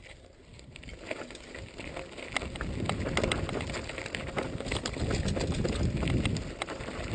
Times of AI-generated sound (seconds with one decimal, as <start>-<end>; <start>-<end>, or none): none

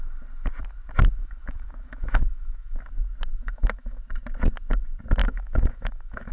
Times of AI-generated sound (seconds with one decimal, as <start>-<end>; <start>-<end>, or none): 1.2-2.9; 3.3-4.0; 5.2-6.3

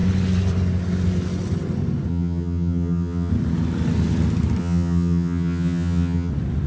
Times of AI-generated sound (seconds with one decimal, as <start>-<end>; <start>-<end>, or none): 2.1-3.3; 4.6-6.3

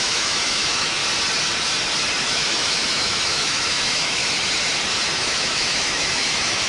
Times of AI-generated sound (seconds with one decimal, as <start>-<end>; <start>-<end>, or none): 0.0-1.0; 2.2-4.2; 5.2-6.7

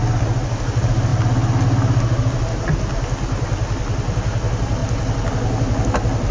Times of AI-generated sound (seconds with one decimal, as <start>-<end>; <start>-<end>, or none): none

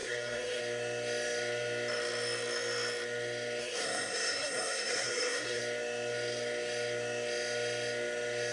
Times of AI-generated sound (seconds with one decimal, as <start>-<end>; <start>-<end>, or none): 0.0-0.6; 3.6-5.6

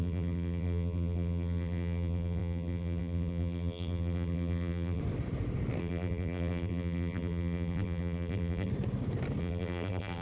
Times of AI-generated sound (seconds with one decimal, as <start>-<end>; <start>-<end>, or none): 0.0-5.0; 5.8-8.7; 9.4-10.2

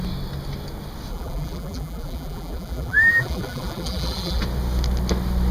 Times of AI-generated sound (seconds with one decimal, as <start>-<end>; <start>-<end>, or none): 1.1-4.4